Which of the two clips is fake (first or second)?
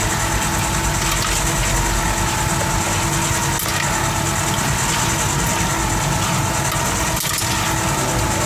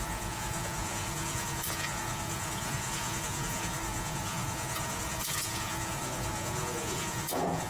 second